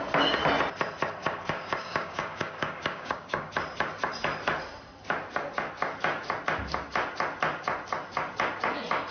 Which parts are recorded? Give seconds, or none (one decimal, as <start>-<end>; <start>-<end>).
0.0-1.2; 3.5-9.1